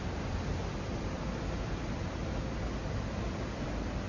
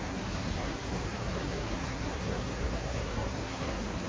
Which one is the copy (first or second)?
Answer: second